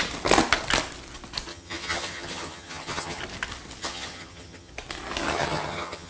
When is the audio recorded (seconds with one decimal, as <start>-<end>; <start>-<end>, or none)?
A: 0.0-1.5; 3.2-3.8; 4.7-5.3

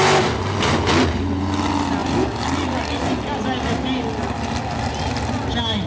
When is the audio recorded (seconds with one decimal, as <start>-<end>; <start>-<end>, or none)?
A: 0.0-5.9

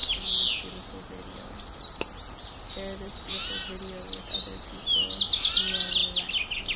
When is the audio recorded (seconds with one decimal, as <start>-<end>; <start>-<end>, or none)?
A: 0.0-6.8

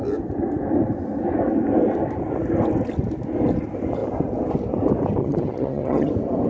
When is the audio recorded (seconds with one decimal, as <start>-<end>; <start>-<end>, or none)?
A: 0.0-5.2; 6.1-6.5

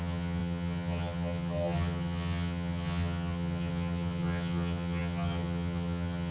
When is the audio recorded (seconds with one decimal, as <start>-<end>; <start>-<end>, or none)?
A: none

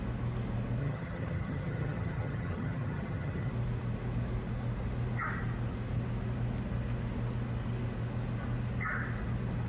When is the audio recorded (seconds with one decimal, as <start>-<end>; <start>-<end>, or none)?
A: 0.0-0.8; 3.5-9.7